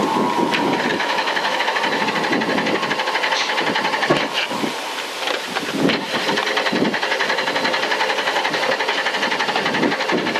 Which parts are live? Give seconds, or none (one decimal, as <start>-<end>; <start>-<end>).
0.0-0.9; 1.8-10.4